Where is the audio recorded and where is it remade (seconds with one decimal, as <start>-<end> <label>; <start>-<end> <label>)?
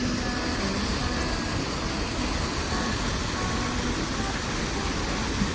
0.0-5.5 recorded